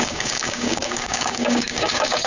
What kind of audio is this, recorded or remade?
remade